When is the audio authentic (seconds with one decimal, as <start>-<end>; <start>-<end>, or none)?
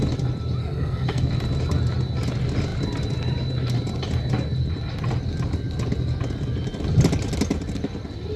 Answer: 0.0-0.6; 1.2-8.4